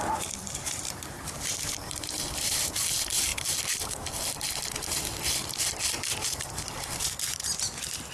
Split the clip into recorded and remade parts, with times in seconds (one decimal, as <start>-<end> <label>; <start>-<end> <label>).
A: 0.0-3.3 remade; 3.3-6.3 recorded; 6.3-8.1 remade